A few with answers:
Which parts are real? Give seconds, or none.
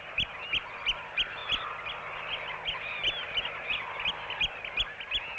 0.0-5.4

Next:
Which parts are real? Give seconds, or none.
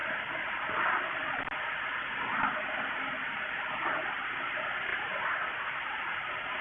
0.0-6.6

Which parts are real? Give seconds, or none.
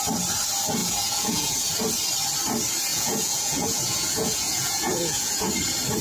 0.0-0.8; 1.7-2.9; 5.5-6.0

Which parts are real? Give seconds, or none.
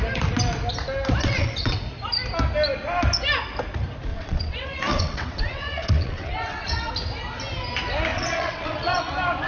0.0-1.2; 1.8-4.1; 6.9-8.1; 9.0-9.5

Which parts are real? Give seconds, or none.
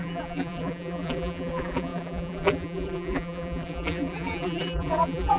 none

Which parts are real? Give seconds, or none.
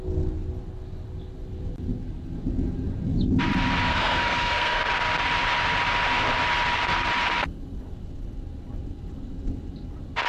0.0-3.9; 4.9-10.3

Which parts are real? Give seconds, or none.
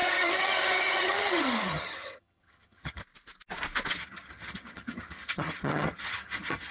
3.0-3.9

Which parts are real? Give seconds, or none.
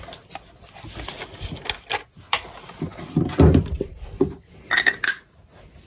0.0-5.9